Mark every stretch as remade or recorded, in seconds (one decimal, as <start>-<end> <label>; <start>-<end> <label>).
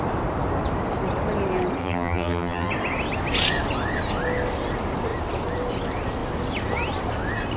0.0-1.8 recorded; 1.8-2.7 remade; 2.7-7.6 recorded